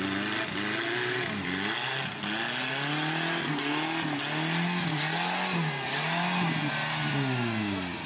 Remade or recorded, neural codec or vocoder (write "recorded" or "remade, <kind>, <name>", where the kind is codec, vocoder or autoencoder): recorded